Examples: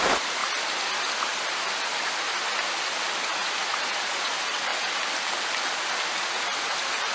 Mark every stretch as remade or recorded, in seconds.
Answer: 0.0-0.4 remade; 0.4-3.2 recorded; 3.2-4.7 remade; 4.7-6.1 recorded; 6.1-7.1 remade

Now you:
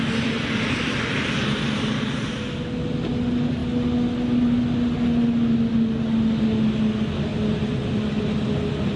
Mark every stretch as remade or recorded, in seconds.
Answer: 0.0-9.0 recorded

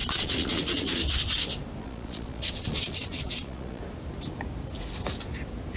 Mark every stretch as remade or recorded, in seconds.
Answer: 0.0-1.0 remade; 1.0-1.8 recorded; 1.8-3.8 remade; 3.8-5.8 recorded

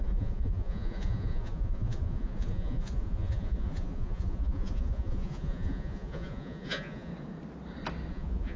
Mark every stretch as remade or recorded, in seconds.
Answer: 0.0-7.1 remade; 7.1-8.1 recorded; 8.1-8.6 remade

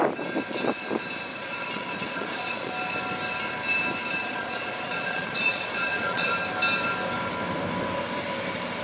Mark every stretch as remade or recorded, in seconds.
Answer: 0.0-1.3 recorded; 1.3-2.7 remade; 2.7-4.2 recorded; 4.2-6.3 remade; 6.3-8.8 recorded

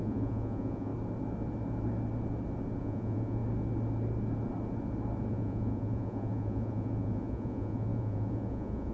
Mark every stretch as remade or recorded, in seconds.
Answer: 0.0-0.9 remade; 0.9-2.8 recorded; 2.8-3.4 remade; 3.4-5.3 recorded; 5.3-8.9 remade

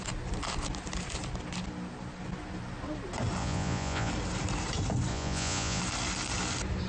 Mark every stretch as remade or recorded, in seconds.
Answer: 0.0-3.4 recorded; 3.4-4.1 remade; 4.1-5.1 recorded; 5.1-5.8 remade; 5.8-6.9 recorded